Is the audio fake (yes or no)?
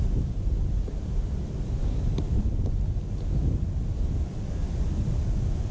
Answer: no